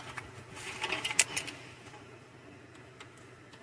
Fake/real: real